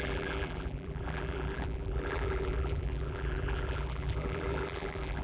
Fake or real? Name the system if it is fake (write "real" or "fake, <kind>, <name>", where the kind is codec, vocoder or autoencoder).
fake, vocoder, BigVGAN v2